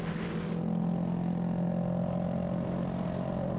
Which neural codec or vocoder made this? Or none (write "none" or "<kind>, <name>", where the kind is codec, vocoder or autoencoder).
none